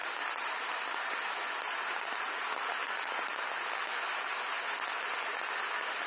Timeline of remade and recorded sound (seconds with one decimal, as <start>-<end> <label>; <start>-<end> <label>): 0.0-6.1 recorded

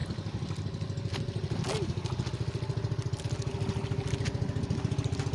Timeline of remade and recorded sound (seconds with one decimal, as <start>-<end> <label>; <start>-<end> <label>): 0.0-5.3 recorded